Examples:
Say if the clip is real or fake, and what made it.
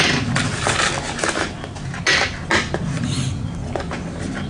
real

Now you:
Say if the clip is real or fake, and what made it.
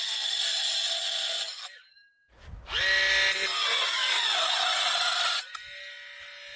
real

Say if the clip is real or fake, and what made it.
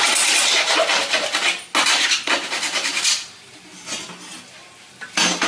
real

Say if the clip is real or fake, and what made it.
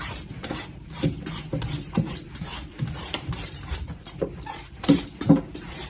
fake, vocoder, BigVGAN v2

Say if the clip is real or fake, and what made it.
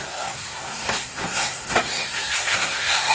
fake, codec, SNAC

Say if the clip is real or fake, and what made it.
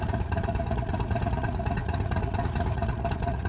fake, vocoder, Vocos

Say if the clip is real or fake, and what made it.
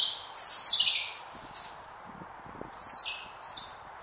real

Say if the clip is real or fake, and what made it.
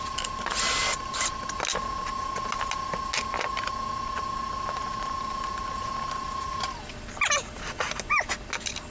real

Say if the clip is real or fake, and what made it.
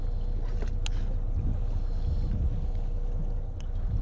real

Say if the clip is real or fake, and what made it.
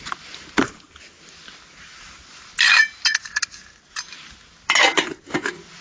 real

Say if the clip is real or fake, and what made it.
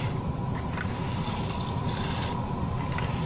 real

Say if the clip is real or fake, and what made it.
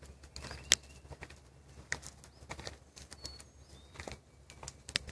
real